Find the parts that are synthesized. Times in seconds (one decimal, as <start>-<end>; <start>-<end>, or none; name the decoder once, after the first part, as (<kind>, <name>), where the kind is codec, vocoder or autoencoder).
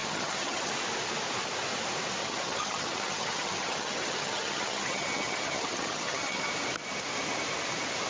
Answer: 0.0-0.7 (vocoder, HiFi-GAN); 2.2-6.5